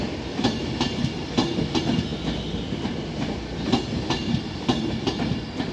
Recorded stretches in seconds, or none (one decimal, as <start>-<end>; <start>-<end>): 0.0-5.7